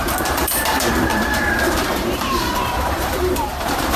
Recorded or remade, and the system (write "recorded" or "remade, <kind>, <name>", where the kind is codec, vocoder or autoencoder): remade, vocoder, BigVGAN v2